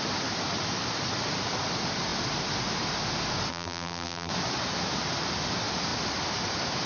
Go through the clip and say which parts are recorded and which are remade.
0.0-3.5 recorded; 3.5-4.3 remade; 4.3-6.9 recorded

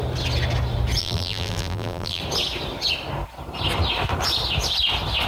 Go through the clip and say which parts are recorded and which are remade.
0.0-1.0 recorded; 1.0-2.2 remade; 2.2-5.3 recorded

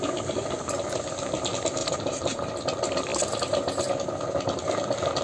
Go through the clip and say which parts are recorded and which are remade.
0.0-1.8 recorded; 1.8-2.5 remade; 2.5-5.2 recorded

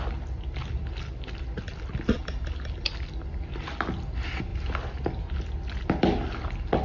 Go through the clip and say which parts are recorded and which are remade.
0.0-6.8 recorded

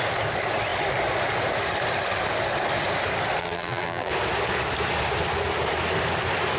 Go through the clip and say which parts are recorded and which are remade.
0.0-3.4 recorded; 3.4-4.1 remade; 4.1-6.6 recorded

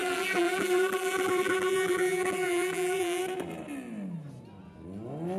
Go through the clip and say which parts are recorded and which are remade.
0.0-3.2 remade; 3.2-5.4 recorded

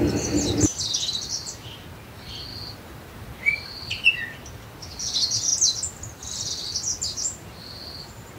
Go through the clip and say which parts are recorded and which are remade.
0.0-8.4 recorded